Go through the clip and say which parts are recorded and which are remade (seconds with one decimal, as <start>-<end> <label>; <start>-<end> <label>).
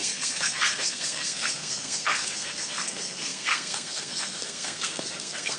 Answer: 0.0-5.6 remade